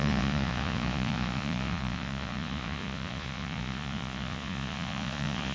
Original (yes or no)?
no